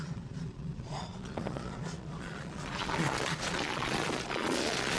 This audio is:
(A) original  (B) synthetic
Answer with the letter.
B